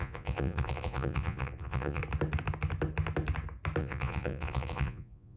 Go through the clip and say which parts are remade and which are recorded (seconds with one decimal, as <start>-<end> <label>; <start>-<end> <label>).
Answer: 0.0-2.0 remade; 2.0-3.8 recorded; 3.8-5.4 remade